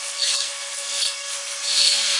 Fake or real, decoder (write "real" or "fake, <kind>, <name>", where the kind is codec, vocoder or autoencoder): fake, codec, SNAC